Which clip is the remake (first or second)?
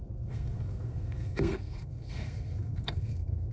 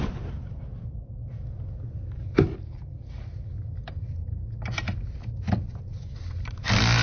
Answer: first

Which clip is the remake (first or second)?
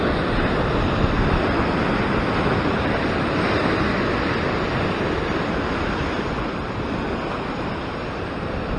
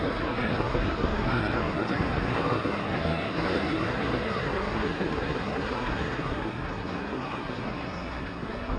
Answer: second